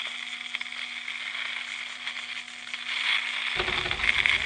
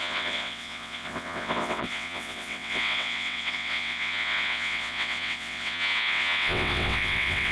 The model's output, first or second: second